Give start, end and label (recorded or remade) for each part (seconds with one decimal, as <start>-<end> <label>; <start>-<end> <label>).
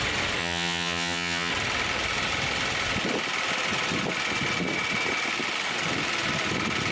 0.0-0.4 recorded; 0.4-1.5 remade; 1.5-6.9 recorded